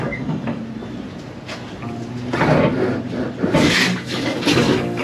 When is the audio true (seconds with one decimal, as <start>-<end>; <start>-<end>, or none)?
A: 0.6-3.6